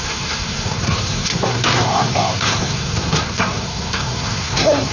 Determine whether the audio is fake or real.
fake